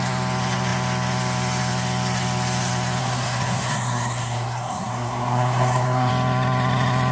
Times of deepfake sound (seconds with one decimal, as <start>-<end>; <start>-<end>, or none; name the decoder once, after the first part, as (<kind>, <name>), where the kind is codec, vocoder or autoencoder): 3.0-6.1 (codec, SNAC)